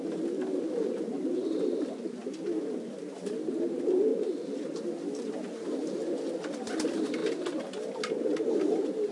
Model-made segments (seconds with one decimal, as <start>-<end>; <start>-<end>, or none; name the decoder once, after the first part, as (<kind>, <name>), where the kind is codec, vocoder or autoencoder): none